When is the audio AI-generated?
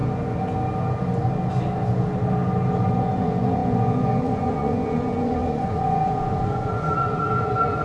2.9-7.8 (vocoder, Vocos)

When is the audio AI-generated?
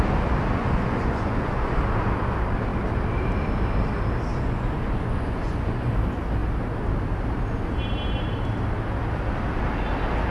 0.6-1.8 (vocoder, Vocos); 4.3-5.9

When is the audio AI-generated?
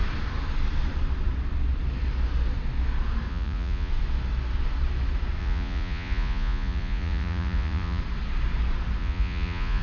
3.3-3.9 (vocoder, Vocos); 5.4-8.0; 9.0-9.8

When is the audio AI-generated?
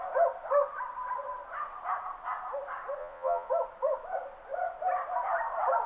3.0-3.5 (vocoder, Vocos)